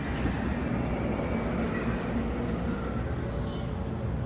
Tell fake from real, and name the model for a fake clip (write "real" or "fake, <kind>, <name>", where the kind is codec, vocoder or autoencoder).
real